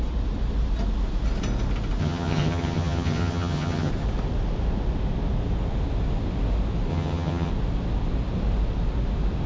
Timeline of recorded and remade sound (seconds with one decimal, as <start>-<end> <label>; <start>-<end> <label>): 0.0-2.0 recorded; 2.0-3.9 remade; 3.9-6.9 recorded; 6.9-7.5 remade; 7.5-9.5 recorded